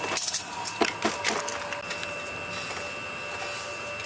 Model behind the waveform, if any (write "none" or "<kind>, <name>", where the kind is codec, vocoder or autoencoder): none